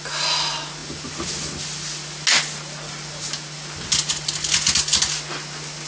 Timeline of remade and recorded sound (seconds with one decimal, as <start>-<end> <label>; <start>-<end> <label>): 0.0-5.9 recorded